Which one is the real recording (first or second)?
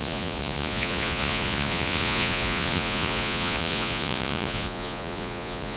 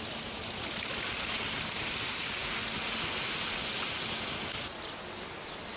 second